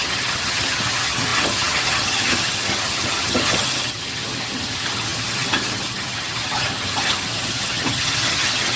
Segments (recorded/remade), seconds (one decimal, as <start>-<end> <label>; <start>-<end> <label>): 0.0-8.8 remade